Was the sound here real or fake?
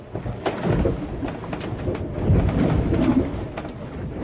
real